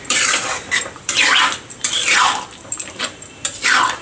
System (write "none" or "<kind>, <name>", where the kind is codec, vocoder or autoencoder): vocoder, BigVGAN v2